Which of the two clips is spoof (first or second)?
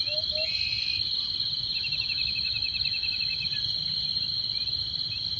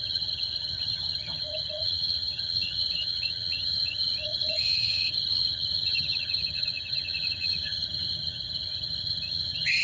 second